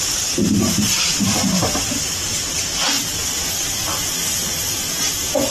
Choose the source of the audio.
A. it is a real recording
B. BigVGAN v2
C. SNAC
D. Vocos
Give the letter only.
B